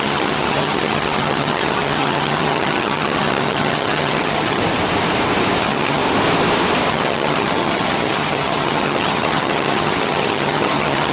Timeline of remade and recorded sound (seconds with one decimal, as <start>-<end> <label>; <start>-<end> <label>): 0.0-4.6 remade; 4.6-5.6 recorded; 5.6-6.0 remade; 6.0-6.9 recorded; 6.9-11.1 remade